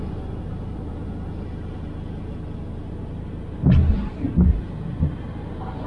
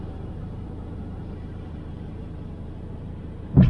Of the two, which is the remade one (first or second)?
second